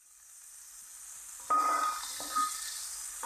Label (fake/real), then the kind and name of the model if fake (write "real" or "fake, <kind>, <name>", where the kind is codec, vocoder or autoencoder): real